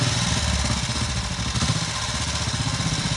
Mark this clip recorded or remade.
recorded